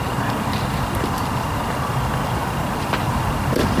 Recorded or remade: recorded